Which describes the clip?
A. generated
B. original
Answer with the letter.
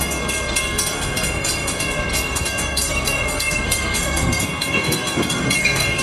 A